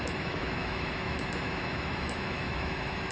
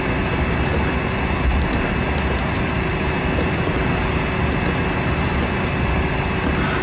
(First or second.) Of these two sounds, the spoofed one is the first